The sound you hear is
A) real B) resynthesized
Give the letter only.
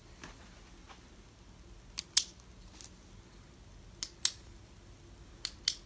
A